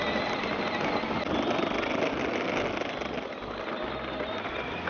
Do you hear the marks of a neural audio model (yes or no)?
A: no